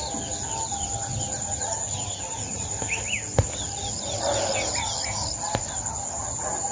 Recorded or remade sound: recorded